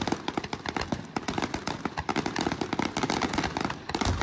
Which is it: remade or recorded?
recorded